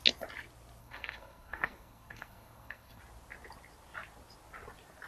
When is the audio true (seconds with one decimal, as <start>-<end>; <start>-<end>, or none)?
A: 0.0-0.8; 3.0-5.1